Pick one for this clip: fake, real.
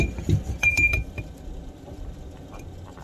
real